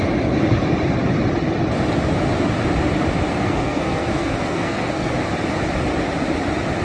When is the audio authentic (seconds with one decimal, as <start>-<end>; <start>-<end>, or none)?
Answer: 0.0-3.3; 5.1-6.8